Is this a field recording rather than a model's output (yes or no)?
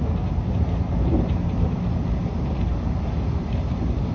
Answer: yes